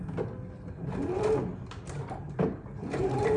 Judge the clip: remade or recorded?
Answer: recorded